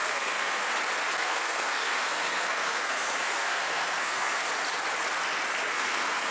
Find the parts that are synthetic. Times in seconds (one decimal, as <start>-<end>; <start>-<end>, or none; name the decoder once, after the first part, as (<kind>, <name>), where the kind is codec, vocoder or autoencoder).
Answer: 0.0-0.6 (codec, SNAC); 1.2-4.5; 5.7-6.3